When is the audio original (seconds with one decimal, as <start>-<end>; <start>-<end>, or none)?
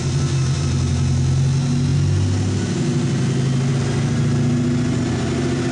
0.0-5.7